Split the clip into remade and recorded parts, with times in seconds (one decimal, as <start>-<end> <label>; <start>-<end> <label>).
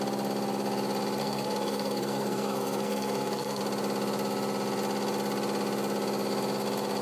0.0-1.2 recorded; 1.2-3.6 remade; 3.6-7.0 recorded